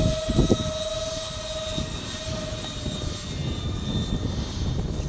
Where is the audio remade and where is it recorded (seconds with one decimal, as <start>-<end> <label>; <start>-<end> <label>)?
0.0-5.1 recorded